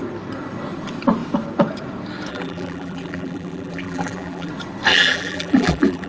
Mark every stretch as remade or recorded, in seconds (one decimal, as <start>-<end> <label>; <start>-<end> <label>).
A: 0.0-2.3 recorded; 2.3-4.5 remade; 4.5-4.9 recorded; 4.9-6.1 remade